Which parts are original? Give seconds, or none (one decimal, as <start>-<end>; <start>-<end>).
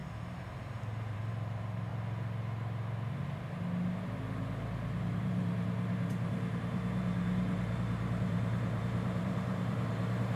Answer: 0.0-0.8; 1.9-5.2